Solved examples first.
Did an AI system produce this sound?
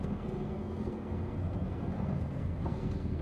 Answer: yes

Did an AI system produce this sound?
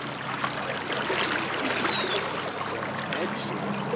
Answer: no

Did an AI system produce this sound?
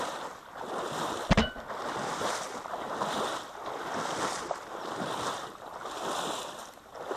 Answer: no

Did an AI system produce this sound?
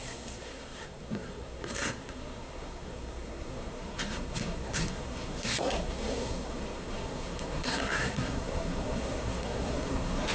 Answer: yes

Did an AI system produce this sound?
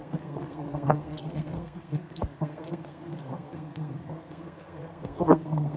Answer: yes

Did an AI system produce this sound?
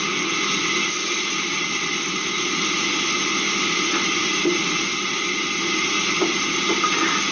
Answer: no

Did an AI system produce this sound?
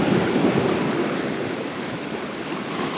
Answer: no